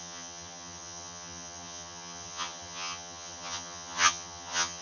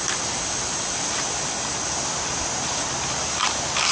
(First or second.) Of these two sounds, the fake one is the first